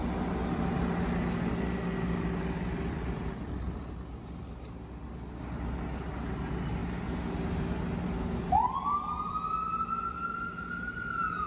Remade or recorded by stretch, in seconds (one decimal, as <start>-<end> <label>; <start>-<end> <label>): 0.0-11.5 recorded